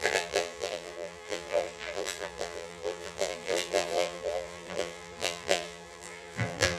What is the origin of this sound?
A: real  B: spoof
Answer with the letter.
B